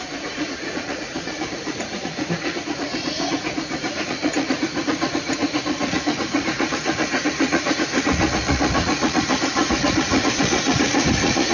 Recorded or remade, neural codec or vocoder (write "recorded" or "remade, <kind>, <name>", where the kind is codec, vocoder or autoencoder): remade, vocoder, Vocos